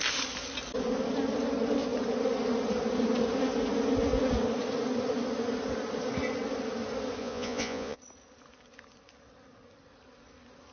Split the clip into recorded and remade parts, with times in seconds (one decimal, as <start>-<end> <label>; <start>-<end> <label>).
0.0-7.2 recorded; 7.2-8.0 remade; 8.0-10.7 recorded